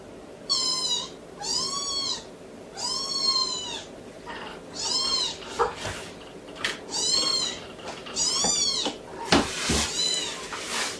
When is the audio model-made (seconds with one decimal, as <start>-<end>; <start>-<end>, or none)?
9.1-9.7